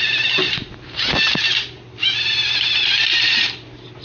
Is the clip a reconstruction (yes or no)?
no